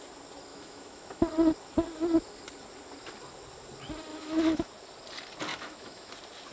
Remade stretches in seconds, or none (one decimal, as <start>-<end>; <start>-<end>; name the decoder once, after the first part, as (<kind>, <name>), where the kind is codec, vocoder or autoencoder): 0.5-1.3 (autoencoder, DAC-VAE); 4.1-4.7; 5.5-6.1